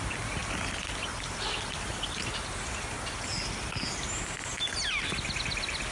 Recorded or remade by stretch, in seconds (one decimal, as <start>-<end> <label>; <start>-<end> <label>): 0.0-5.9 recorded